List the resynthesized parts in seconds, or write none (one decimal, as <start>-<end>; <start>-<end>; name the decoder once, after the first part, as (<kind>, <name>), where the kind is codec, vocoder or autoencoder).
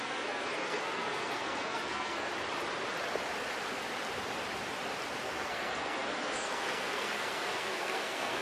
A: 0.0-2.3 (codec, SNAC); 5.2-8.4